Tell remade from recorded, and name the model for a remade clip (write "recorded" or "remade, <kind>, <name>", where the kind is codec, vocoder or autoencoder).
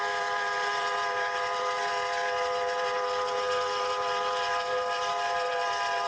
recorded